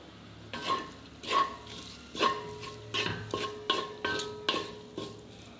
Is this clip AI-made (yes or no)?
no